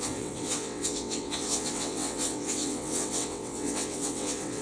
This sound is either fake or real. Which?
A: fake